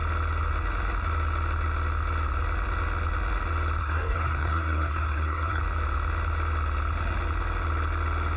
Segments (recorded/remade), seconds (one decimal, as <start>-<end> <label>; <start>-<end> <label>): 0.0-3.8 recorded; 3.8-5.6 remade; 5.6-8.4 recorded